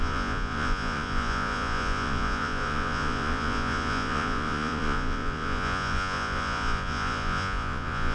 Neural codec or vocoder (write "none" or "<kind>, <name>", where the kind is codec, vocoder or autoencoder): vocoder, Vocos